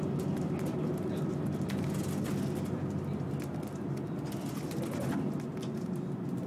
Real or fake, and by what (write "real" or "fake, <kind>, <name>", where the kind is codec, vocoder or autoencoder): real